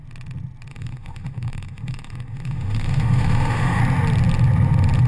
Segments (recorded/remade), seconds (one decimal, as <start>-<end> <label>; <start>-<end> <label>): 0.0-0.7 recorded; 0.7-3.8 remade; 3.8-5.1 recorded